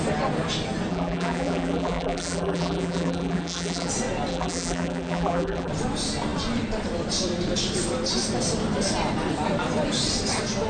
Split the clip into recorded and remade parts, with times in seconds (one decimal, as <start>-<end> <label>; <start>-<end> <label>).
0.0-0.9 recorded; 0.9-3.9 remade; 3.9-4.3 recorded; 4.3-5.7 remade; 5.7-10.7 recorded